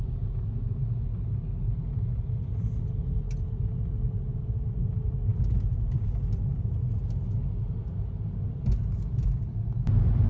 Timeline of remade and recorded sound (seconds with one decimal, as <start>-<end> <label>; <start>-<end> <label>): 0.0-10.3 recorded